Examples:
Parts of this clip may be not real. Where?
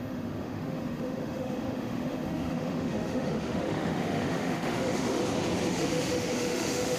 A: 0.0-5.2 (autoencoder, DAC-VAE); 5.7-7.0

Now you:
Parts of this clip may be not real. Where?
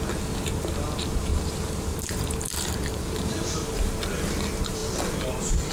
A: 1.3-3.9 (vocoder, BigVGAN v2)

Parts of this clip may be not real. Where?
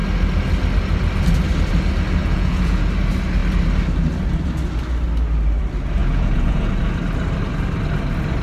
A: 2.2-2.9 (vocoder, Vocos); 6.0-6.8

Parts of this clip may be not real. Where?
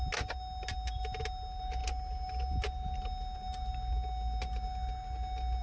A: none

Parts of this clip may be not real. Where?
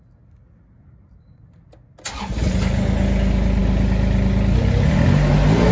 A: none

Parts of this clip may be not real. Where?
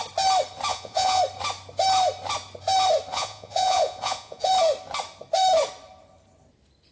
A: 0.7-1.2 (vocoder, Vocos); 3.1-4.5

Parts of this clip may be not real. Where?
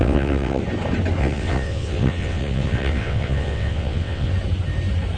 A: 0.0-0.6 (vocoder, WaveNeXt); 1.2-4.3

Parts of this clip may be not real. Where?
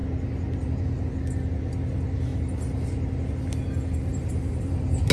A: 4.0-5.1 (vocoder, BigVGAN v2)